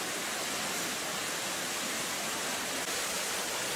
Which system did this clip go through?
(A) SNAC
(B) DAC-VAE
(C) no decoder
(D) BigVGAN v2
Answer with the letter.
C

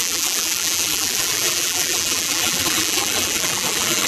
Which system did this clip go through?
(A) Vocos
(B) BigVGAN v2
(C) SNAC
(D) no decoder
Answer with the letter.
B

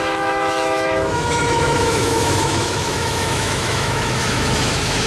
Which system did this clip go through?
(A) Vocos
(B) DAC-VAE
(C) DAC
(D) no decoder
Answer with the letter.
B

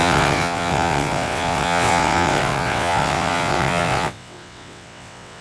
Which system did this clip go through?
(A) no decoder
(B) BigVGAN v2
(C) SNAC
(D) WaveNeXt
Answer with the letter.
D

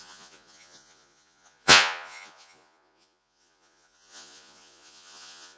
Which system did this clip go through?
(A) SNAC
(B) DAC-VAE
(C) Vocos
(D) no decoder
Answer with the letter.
C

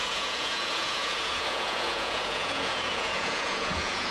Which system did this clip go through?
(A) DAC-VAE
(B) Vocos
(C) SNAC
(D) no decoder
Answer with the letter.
B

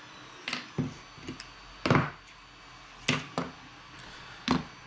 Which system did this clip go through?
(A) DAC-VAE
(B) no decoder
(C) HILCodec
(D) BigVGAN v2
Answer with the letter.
B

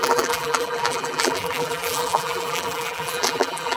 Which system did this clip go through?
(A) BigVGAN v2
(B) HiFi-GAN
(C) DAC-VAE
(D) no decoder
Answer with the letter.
A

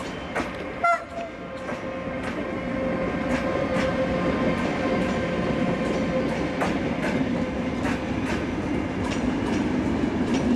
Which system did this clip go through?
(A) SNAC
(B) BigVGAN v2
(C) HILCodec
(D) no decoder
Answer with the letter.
D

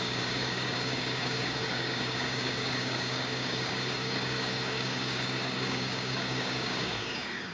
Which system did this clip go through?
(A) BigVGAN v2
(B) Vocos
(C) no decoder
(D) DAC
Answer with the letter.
D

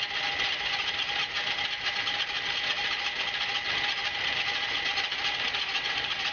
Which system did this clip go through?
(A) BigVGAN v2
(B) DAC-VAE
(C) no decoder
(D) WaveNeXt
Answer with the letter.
C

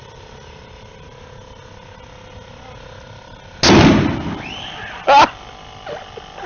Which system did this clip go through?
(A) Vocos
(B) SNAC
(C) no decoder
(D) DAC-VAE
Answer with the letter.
C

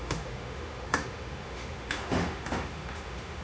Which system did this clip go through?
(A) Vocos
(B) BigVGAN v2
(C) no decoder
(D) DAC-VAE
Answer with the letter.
D